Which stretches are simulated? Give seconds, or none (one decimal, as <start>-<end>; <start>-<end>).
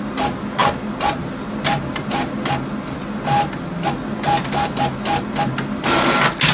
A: none